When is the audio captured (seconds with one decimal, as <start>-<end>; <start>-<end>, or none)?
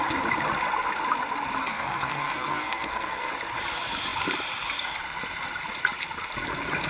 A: 0.0-1.6; 3.3-6.9